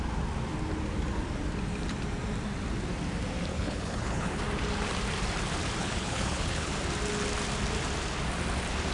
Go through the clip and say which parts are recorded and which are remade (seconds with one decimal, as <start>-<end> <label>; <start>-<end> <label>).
0.0-3.5 recorded; 3.5-4.4 remade; 4.4-5.8 recorded; 5.8-6.7 remade; 6.7-8.9 recorded